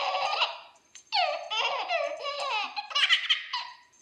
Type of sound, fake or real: real